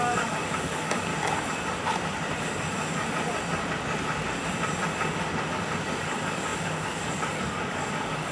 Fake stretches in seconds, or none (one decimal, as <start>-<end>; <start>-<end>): 0.0-1.1; 5.5-8.3